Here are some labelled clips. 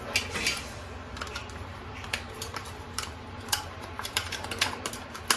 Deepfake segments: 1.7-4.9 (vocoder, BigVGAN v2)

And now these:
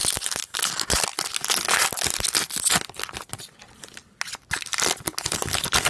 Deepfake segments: none

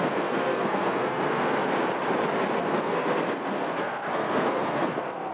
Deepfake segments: 0.0-1.8 (codec, SNAC); 2.6-5.3

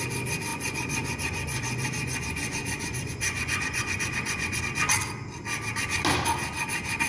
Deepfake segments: 0.5-4.6 (vocoder, Vocos)